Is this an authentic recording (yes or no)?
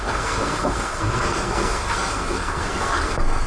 no